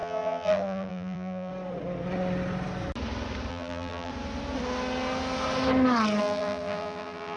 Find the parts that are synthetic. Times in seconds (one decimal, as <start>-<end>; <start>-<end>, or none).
0.0-1.5; 3.5-4.1; 6.2-7.4